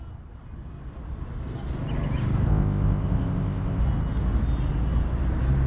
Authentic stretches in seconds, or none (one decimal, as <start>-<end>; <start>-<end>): 0.0-2.5; 3.8-5.7